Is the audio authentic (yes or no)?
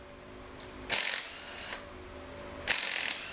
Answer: yes